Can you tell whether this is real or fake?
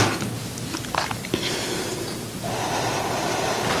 real